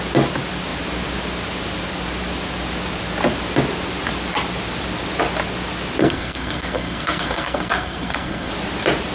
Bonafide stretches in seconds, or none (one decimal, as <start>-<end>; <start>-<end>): 0.0-6.0; 8.5-9.1